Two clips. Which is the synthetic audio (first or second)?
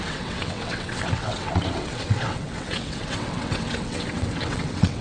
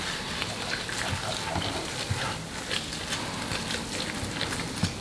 first